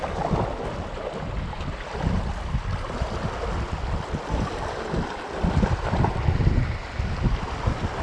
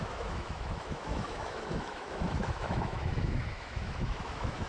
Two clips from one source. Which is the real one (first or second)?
first